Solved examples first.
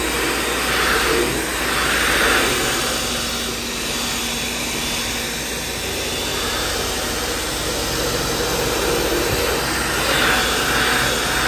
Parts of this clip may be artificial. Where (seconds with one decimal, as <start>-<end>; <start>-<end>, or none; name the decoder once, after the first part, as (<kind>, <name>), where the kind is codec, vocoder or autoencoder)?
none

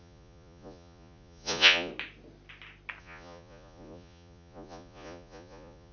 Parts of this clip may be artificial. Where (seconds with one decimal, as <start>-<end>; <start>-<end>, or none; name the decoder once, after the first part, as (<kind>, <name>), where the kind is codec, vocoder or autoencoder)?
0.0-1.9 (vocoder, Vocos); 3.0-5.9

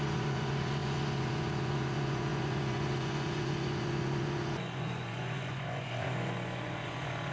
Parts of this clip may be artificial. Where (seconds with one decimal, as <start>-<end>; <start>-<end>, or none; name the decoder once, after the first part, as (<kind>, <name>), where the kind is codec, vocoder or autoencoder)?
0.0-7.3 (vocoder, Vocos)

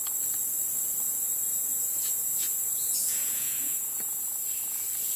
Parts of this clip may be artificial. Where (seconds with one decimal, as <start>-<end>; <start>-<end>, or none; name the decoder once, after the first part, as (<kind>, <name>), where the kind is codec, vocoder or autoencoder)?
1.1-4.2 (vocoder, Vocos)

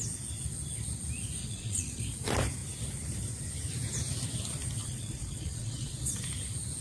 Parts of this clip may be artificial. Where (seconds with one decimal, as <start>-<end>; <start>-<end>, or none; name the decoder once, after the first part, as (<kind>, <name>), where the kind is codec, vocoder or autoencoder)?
1.4-2.0 (vocoder, Vocos); 4.8-6.2